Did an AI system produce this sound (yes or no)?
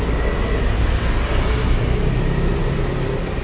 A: no